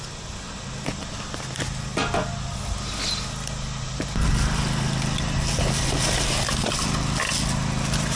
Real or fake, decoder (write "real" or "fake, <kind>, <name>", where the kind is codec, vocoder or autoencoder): real